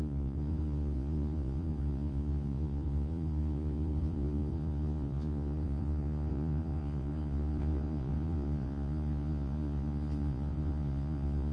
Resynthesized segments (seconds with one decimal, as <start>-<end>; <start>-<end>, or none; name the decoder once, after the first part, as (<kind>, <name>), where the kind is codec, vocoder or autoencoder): 0.0-11.5 (vocoder, Vocos)